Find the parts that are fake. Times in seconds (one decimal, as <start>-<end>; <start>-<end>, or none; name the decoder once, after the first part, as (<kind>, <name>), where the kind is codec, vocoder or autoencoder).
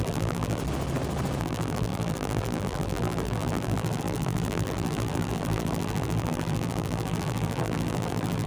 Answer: 0.0-0.6 (vocoder, BigVGAN v2); 1.4-8.5